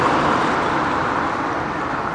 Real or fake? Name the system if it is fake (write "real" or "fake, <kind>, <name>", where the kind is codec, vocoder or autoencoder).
real